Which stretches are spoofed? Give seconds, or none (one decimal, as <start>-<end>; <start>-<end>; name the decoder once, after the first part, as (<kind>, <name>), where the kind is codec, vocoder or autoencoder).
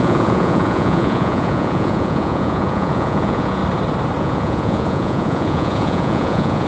0.0-3.6 (vocoder, Vocos); 4.2-6.7